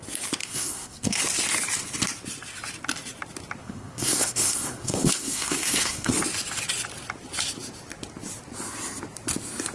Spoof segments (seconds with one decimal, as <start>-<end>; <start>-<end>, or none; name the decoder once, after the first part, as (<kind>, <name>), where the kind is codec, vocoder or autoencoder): 0.4-1.2 (codec, SNAC); 3.6-6.1